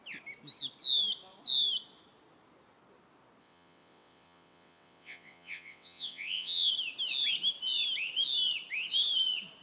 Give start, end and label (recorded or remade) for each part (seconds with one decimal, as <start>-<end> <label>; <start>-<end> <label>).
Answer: 0.0-3.4 recorded; 3.4-6.7 remade; 6.7-9.6 recorded